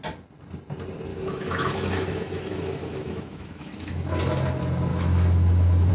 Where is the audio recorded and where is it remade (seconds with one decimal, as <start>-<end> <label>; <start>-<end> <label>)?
0.0-1.1 recorded; 1.1-4.2 remade; 4.2-4.9 recorded; 4.9-5.9 remade